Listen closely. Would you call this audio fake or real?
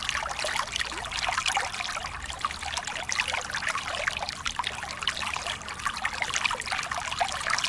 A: real